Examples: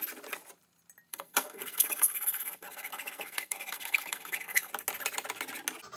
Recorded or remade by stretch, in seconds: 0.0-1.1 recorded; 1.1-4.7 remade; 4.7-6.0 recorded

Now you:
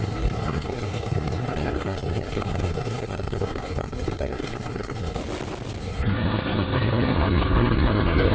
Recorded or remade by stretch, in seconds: 0.0-5.2 remade; 5.2-5.8 recorded; 5.8-8.3 remade